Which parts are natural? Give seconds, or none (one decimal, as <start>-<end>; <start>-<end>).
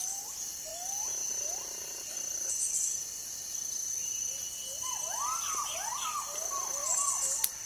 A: 0.0-7.7